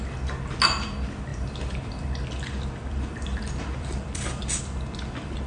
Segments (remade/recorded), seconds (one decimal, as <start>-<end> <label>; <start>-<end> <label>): 0.0-1.3 recorded; 1.3-4.6 remade; 4.6-5.5 recorded